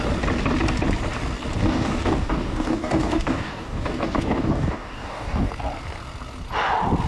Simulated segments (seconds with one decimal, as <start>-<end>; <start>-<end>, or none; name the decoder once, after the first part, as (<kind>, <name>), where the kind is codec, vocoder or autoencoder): 1.6-5.5 (codec, DAC)